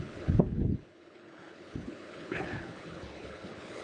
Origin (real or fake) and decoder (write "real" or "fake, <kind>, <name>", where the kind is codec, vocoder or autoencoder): fake, codec, HILCodec